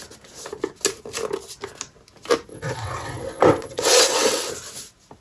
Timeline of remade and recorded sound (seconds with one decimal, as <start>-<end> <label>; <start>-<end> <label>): 0.0-2.5 recorded; 2.5-4.5 remade; 4.5-5.2 recorded